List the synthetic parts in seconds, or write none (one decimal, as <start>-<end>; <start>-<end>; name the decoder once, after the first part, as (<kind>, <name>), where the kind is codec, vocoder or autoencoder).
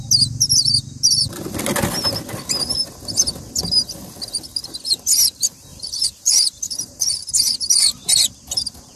5.7-8.4 (vocoder, BigVGAN v2)